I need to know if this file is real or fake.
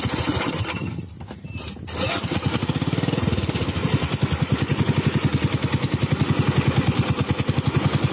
real